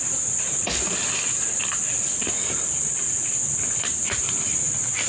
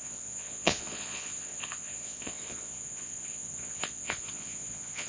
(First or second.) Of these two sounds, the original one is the first